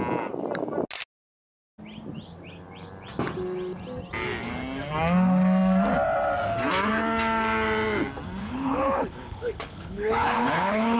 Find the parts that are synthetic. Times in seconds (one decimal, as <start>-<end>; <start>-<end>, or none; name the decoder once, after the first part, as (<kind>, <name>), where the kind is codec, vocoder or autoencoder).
8.4-11.0 (codec, HILCodec)